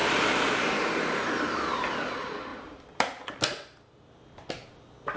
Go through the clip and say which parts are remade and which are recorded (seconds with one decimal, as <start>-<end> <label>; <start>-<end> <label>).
0.0-1.3 remade; 1.3-2.5 recorded; 2.5-3.3 remade; 3.3-5.2 recorded